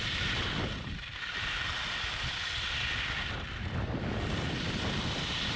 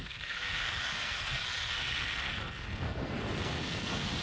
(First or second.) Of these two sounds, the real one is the first